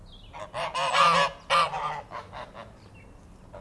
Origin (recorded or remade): recorded